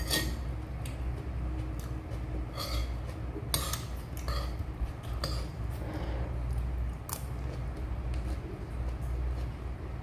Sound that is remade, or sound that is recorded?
recorded